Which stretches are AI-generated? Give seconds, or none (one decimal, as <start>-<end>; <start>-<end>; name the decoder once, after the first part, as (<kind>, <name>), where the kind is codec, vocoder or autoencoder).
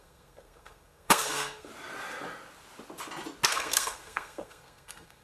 0.0-1.7 (codec, SNAC); 3.5-5.2